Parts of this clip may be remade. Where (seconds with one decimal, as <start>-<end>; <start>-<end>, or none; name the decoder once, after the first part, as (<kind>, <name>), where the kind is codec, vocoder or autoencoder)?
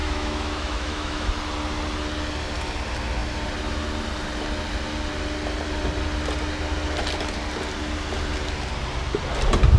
0.0-1.3 (autoencoder, DAC-VAE)